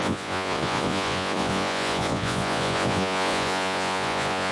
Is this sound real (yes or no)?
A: no